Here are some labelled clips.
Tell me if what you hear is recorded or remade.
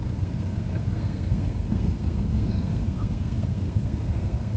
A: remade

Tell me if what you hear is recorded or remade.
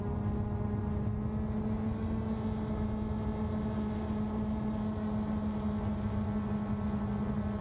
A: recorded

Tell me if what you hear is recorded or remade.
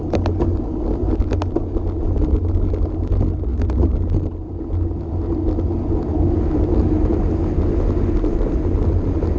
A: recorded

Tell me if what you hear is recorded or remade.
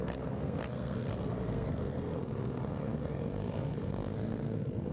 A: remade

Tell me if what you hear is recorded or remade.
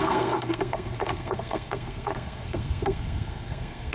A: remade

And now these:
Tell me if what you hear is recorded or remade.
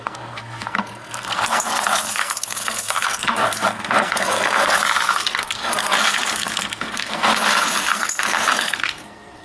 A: remade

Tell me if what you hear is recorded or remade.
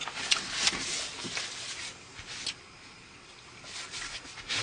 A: recorded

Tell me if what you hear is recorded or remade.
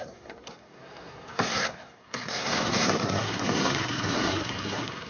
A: remade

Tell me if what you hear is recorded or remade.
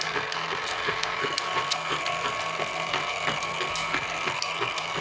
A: remade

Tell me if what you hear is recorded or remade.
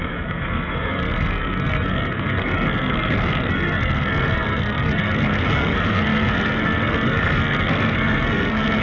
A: remade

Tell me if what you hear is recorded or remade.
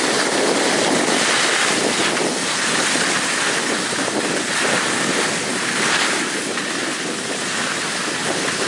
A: recorded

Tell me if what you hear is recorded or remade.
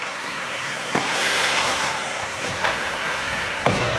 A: remade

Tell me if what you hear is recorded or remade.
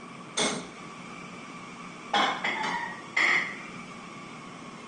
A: recorded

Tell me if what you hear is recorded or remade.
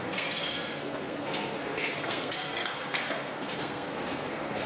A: remade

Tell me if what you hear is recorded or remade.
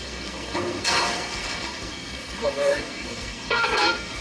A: remade